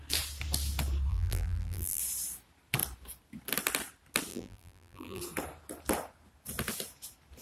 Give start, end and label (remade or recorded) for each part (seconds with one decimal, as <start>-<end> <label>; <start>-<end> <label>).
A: 0.0-1.1 recorded; 1.1-2.0 remade; 2.0-4.3 recorded; 4.3-5.2 remade; 5.2-7.4 recorded